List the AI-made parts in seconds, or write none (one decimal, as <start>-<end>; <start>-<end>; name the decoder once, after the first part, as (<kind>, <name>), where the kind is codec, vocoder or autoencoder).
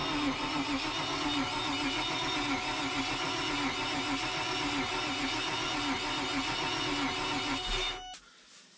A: none